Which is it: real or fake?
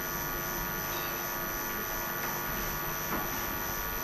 real